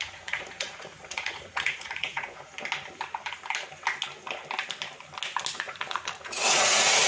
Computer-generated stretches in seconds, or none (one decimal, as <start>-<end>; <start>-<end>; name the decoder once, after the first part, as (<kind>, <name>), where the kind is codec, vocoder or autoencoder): 0.0-2.5 (vocoder, Vocos); 5.5-7.1